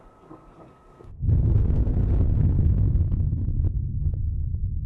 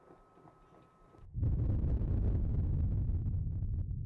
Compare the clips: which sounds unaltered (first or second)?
second